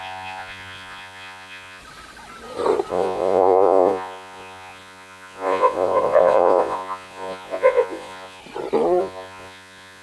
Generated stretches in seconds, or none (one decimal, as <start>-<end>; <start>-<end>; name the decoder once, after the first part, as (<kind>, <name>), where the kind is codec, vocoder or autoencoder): 0.0-1.8 (vocoder, Vocos); 2.9-8.4; 9.0-10.0